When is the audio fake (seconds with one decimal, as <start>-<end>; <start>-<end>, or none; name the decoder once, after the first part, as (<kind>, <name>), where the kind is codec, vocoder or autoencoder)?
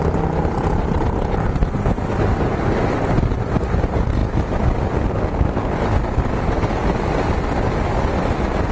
none